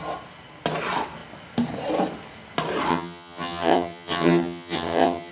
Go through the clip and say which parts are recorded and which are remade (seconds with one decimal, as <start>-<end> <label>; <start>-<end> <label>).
0.0-2.9 recorded; 2.9-5.3 remade